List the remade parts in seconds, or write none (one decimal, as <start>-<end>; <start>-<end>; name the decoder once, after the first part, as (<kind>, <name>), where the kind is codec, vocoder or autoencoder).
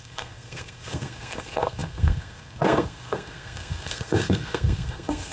0.0-5.3 (codec, SNAC)